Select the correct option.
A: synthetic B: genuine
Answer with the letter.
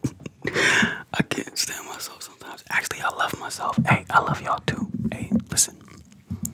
B